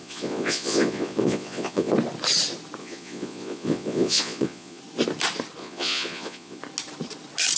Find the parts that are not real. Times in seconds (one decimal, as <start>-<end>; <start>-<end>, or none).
0.0-1.9; 2.8-4.8; 5.6-6.6